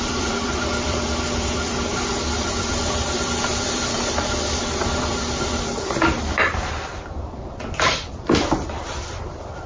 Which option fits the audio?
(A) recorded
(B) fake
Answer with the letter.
B